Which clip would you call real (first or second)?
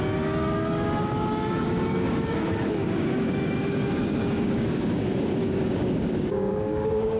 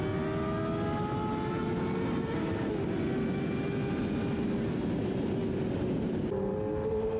second